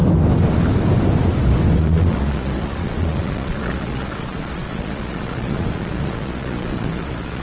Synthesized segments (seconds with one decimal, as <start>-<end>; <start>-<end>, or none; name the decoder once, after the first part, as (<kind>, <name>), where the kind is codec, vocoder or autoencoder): 1.8-7.4 (vocoder, Vocos)